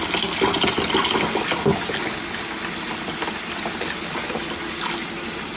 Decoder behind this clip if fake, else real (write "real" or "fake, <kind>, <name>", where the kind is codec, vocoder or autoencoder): real